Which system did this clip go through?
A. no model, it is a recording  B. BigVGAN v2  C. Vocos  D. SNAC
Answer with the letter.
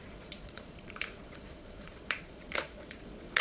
C